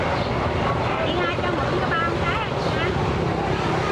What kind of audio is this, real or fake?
real